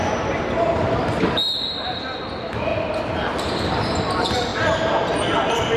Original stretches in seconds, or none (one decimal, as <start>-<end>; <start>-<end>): 4.5-5.3